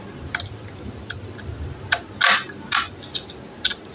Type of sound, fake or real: real